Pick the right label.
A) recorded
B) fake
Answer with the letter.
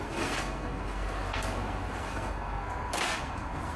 B